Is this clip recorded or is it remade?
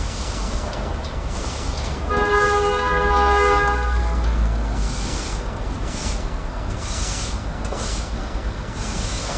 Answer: remade